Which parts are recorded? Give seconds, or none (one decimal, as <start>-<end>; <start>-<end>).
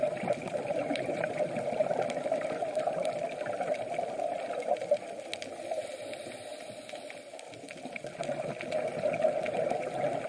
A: 0.0-0.4; 1.3-10.3